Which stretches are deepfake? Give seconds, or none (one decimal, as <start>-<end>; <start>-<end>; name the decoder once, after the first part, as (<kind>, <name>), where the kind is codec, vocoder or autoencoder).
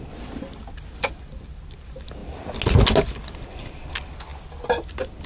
none